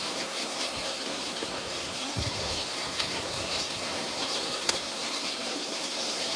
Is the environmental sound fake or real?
fake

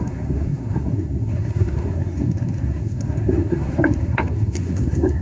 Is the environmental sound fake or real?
fake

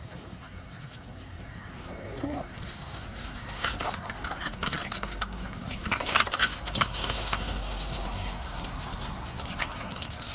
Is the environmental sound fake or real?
fake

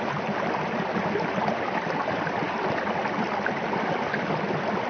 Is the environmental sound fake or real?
real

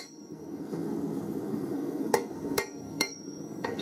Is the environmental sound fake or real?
fake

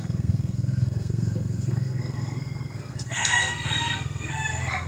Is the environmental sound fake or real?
fake